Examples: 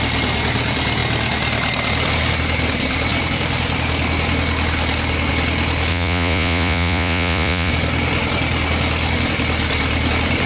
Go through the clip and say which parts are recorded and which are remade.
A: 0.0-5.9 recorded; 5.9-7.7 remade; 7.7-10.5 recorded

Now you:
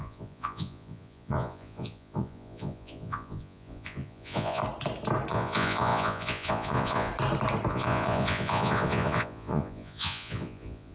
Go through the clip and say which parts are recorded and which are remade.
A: 0.0-4.6 remade; 4.6-5.3 recorded; 5.3-7.1 remade; 7.1-7.7 recorded; 7.7-10.9 remade

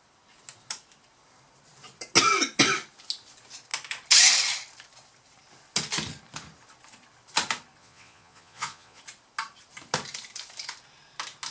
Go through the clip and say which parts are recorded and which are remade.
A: 0.0-7.8 recorded; 7.8-9.0 remade; 9.0-11.5 recorded

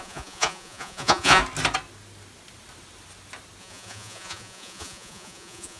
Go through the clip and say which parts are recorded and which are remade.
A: 0.0-1.4 remade; 1.4-3.6 recorded; 3.6-5.8 remade

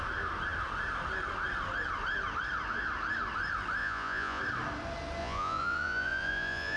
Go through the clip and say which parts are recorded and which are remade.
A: 0.0-3.8 recorded; 3.8-4.4 remade; 4.4-5.2 recorded; 5.2-6.8 remade

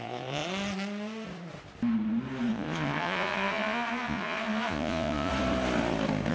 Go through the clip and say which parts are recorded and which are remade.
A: 0.0-0.4 remade; 0.4-2.5 recorded; 2.5-5.3 remade; 5.3-6.3 recorded

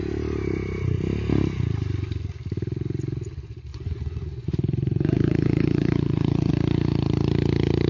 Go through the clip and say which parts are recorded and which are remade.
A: 0.0-3.7 recorded; 3.7-6.5 remade; 6.5-7.9 recorded